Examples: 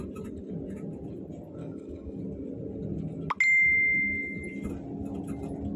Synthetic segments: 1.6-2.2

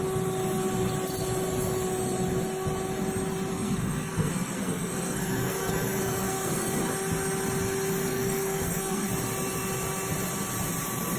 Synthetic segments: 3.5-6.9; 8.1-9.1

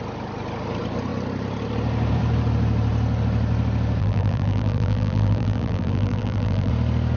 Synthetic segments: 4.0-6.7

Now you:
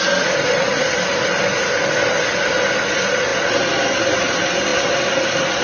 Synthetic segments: none

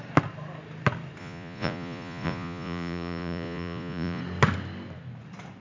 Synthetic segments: 1.2-4.2

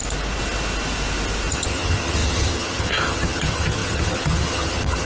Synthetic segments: 1.5-5.0

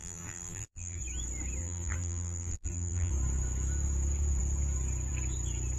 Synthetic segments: 0.0-1.0; 1.6-3.1